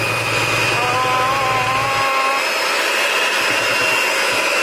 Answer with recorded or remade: recorded